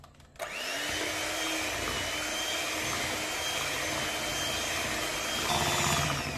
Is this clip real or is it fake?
real